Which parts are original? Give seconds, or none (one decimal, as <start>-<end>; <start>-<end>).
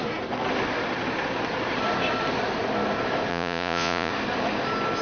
0.0-3.3; 4.1-5.0